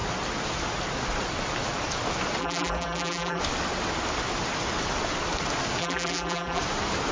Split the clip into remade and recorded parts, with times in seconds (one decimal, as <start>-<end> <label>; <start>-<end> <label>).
0.0-2.4 recorded; 2.4-3.4 remade; 3.4-5.8 recorded; 5.8-6.6 remade; 6.6-7.1 recorded